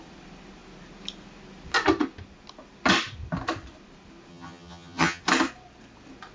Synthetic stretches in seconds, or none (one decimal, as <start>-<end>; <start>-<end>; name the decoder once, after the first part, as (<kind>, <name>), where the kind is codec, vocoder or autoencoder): 4.3-5.2 (vocoder, HiFi-GAN)